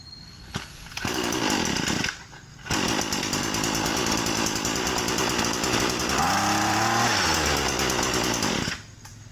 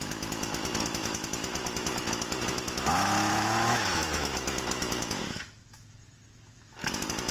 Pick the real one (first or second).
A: first